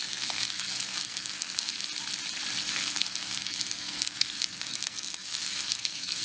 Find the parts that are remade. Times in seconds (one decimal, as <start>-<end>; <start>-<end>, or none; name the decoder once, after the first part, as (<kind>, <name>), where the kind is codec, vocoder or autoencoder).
0.0-1.8 (codec, SNAC); 2.7-6.2